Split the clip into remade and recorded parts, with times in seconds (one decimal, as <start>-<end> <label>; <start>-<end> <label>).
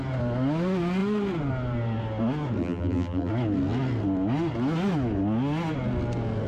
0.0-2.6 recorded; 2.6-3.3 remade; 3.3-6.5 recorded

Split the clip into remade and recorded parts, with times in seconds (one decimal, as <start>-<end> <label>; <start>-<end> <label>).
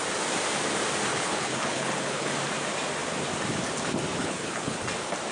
0.0-1.1 recorded; 1.1-2.3 remade; 2.3-4.2 recorded; 4.2-4.8 remade; 4.8-5.3 recorded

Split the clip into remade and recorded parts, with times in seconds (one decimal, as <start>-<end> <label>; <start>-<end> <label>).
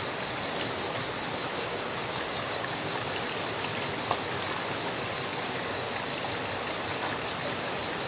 0.0-1.5 recorded; 1.5-3.0 remade; 3.0-5.3 recorded; 5.3-5.9 remade; 5.9-8.1 recorded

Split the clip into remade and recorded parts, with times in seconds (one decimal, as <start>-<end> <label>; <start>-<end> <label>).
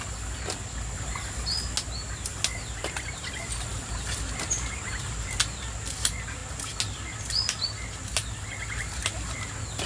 0.0-9.9 recorded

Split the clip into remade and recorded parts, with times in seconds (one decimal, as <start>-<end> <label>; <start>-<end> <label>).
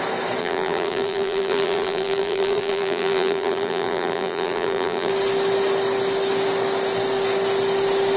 0.0-0.4 recorded; 0.4-5.1 remade; 5.1-8.2 recorded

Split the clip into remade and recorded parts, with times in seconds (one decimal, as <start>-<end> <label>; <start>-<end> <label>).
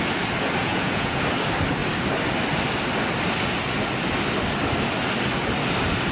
0.0-0.6 recorded; 0.6-1.2 remade; 1.2-6.1 recorded